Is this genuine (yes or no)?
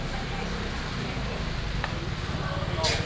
yes